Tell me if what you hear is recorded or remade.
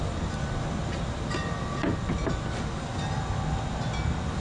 recorded